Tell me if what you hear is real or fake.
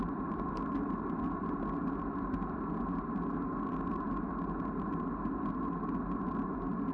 real